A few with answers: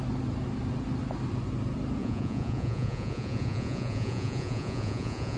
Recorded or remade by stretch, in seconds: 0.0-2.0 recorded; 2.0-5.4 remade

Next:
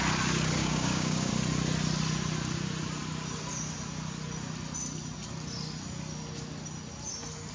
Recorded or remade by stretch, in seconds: 0.0-0.6 recorded; 0.6-1.3 remade; 1.3-7.5 recorded

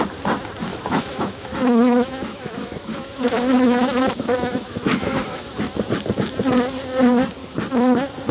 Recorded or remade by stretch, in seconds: 0.0-0.7 recorded; 0.7-5.6 remade; 5.6-8.3 recorded

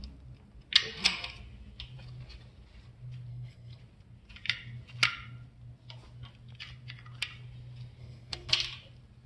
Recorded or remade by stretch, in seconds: 0.0-3.3 recorded; 3.3-3.8 remade; 3.8-8.0 recorded; 8.0-8.5 remade; 8.5-9.3 recorded